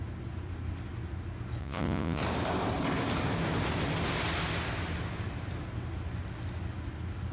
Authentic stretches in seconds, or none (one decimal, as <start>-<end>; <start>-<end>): 0.0-1.6; 2.2-7.3